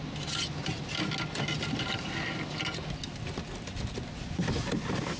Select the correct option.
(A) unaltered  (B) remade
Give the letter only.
A